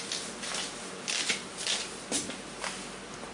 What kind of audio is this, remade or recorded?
recorded